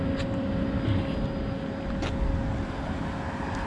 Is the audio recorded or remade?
recorded